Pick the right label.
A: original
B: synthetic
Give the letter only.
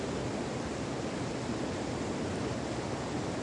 A